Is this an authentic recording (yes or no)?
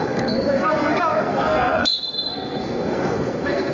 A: no